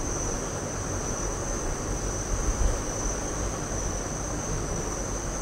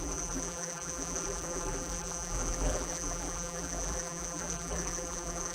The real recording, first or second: first